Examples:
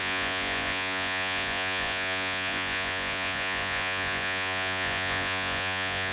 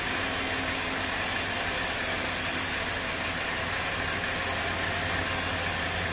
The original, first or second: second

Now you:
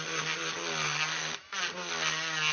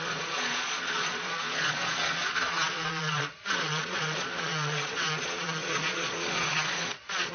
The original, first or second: first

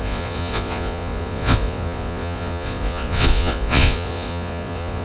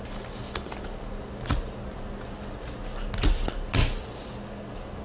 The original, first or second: second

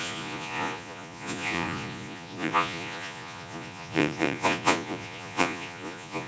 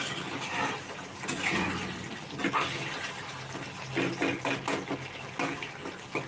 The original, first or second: second